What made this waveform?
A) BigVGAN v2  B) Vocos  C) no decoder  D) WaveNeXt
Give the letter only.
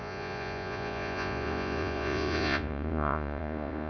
B